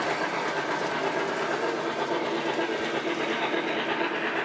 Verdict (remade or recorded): recorded